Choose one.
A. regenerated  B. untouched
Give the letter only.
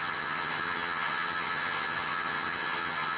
A